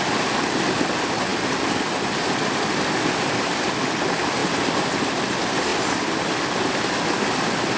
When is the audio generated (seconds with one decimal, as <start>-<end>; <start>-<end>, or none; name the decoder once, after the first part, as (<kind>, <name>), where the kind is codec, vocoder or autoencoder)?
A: none